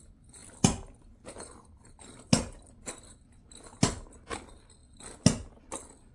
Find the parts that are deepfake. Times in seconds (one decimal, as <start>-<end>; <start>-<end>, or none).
none